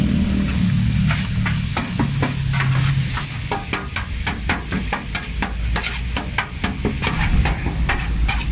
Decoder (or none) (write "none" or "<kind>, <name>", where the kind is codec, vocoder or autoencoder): none